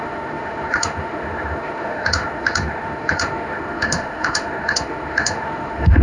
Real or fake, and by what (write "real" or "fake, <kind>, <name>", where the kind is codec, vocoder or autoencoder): fake, autoencoder, DAC-VAE